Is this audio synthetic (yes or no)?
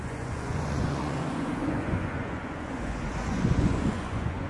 yes